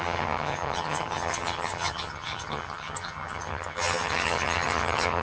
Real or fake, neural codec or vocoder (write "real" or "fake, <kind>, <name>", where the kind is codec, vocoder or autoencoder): fake, vocoder, HiFi-GAN